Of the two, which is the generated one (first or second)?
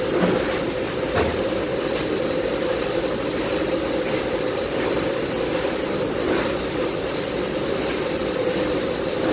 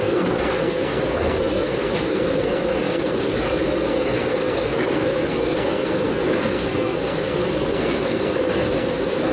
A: second